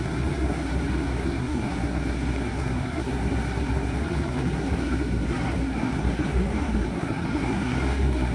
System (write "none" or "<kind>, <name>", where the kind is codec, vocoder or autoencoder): codec, SNAC